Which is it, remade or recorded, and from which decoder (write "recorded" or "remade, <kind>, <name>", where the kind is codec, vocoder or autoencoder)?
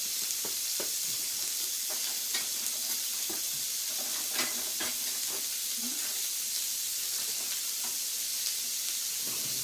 recorded